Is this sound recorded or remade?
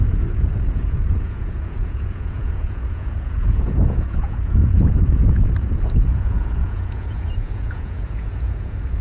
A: remade